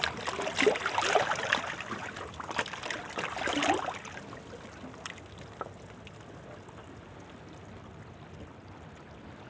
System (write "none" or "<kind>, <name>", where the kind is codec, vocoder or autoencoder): none